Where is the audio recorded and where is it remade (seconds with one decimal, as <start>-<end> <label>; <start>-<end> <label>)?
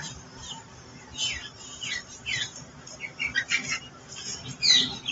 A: 0.0-5.1 recorded